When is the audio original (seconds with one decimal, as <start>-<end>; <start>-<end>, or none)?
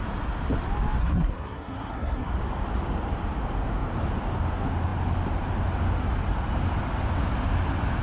0.0-1.0; 2.3-8.0